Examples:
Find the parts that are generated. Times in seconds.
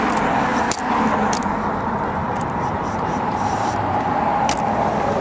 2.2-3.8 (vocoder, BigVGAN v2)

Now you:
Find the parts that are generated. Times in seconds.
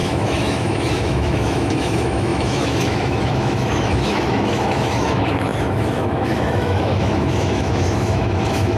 0.0-8.8 (autoencoder, DAC-VAE)